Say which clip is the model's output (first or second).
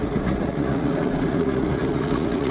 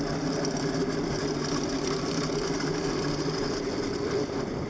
first